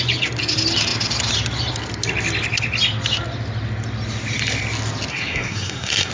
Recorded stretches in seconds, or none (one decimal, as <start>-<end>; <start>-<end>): 0.0-5.1